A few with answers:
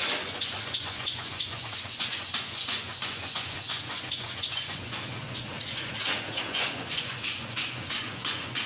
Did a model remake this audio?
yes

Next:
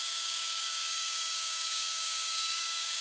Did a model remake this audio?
yes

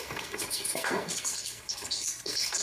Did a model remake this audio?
yes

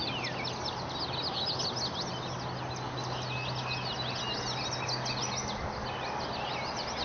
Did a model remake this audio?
no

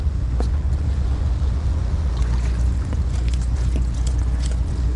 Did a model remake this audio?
yes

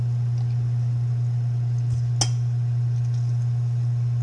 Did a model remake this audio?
no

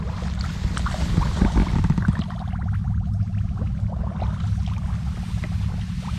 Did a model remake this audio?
no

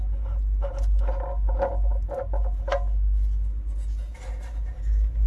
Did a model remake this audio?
no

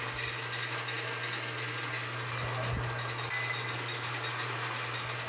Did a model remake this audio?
no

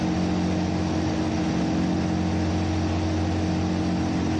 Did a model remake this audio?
no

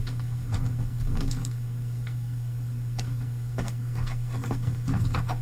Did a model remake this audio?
yes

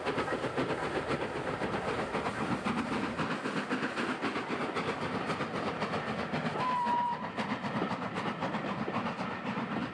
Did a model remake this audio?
no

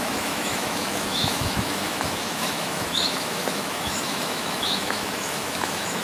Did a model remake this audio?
yes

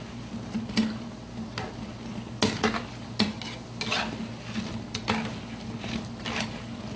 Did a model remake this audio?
no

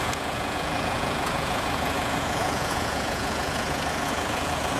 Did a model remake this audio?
yes